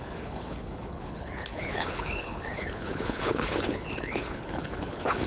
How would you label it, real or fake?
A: fake